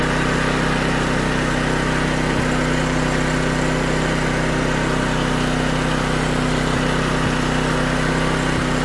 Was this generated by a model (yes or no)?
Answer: no